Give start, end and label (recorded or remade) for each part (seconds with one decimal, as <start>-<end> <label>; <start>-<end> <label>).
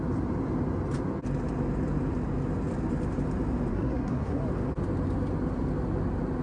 0.0-3.7 recorded; 3.7-4.4 remade; 4.4-6.4 recorded